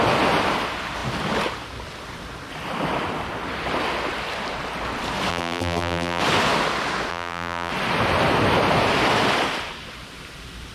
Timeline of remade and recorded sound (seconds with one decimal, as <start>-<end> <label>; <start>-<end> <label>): 0.0-5.3 recorded; 5.3-6.2 remade; 6.2-7.1 recorded; 7.1-7.7 remade; 7.7-10.7 recorded

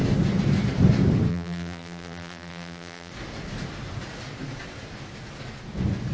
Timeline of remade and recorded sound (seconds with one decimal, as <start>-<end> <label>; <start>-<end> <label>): 0.0-1.3 recorded; 1.3-3.1 remade; 3.1-6.1 recorded

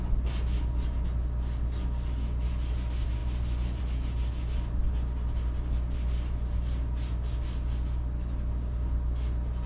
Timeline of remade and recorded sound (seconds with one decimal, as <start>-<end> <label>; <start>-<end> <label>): 0.0-9.7 recorded

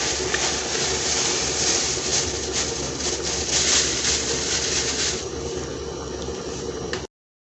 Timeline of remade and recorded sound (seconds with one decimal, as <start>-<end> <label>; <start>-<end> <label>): 0.0-7.4 recorded

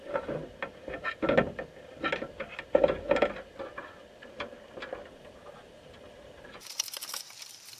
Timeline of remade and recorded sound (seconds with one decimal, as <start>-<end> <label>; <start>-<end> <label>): 0.0-0.4 remade; 0.4-5.1 recorded; 5.1-7.8 remade

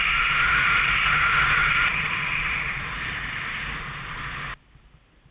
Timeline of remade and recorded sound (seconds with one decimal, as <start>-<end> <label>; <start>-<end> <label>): 0.0-1.6 recorded; 1.6-3.6 remade; 3.6-5.3 recorded

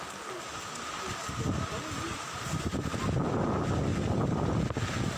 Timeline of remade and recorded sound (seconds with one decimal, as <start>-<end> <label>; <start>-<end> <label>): 0.0-3.9 recorded; 3.9-4.5 remade; 4.5-5.2 recorded

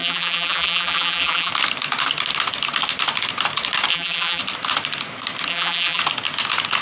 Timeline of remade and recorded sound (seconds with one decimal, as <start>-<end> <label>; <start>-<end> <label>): 0.0-1.5 remade; 1.5-3.9 recorded; 3.9-4.4 remade; 4.4-5.5 recorded; 5.5-6.0 remade; 6.0-6.8 recorded